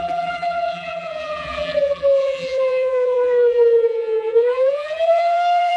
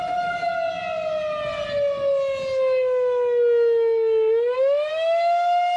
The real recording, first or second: second